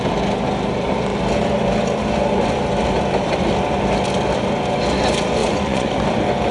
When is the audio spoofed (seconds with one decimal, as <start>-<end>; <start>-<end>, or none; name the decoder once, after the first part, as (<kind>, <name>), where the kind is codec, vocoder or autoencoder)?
5.4-6.0 (vocoder, Vocos)